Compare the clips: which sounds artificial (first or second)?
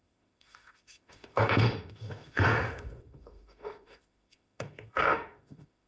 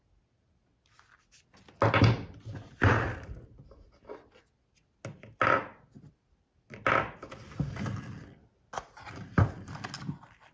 first